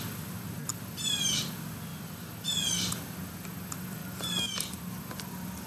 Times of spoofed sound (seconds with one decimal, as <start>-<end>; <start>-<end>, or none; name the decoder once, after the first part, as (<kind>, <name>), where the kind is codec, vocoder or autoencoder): 0.7-1.4 (vocoder, BigVGAN v2); 1.9-2.4